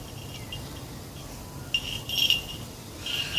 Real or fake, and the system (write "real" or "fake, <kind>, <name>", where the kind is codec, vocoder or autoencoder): real